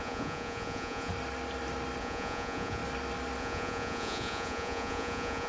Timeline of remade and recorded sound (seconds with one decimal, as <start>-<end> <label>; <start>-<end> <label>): 0.0-1.1 remade; 1.1-2.0 recorded; 2.0-2.8 remade; 2.8-3.4 recorded; 3.4-5.5 remade